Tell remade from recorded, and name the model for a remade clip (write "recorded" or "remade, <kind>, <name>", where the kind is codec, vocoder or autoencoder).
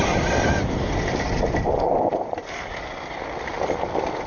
recorded